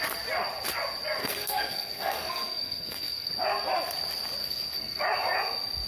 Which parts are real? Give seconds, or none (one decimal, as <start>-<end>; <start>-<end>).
0.0-1.2; 3.3-4.4; 5.0-5.9